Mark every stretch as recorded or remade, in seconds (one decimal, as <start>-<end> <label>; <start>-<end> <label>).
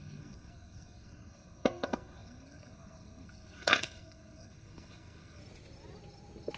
0.0-5.4 remade; 5.4-6.6 recorded